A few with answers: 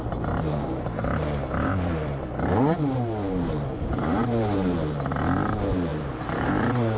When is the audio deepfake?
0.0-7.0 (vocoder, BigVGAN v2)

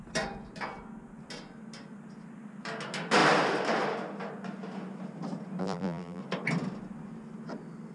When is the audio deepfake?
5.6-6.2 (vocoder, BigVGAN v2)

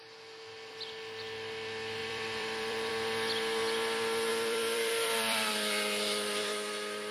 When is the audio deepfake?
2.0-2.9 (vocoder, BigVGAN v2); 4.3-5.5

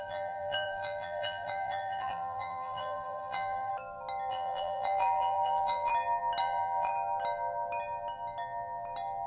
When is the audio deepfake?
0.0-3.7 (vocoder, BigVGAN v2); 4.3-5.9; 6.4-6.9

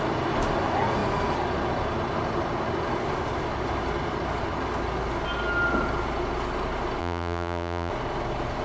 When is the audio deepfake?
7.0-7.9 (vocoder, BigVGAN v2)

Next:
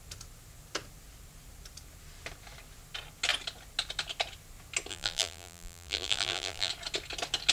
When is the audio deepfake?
4.9-6.7 (vocoder, BigVGAN v2)